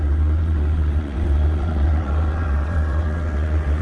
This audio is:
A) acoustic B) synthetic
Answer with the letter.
B